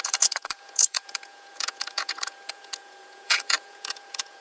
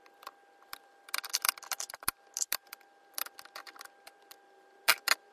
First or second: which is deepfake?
first